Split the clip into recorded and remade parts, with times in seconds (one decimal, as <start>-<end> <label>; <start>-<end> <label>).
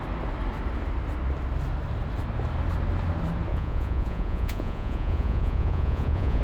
0.0-3.5 recorded; 3.5-6.4 remade